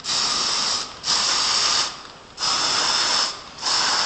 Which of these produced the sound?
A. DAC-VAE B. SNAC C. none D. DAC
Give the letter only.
C